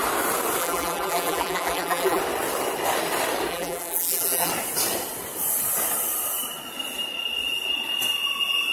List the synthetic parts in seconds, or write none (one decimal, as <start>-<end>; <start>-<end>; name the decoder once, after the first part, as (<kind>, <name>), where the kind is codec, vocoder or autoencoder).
0.6-2.2 (vocoder, BigVGAN v2); 3.5-4.5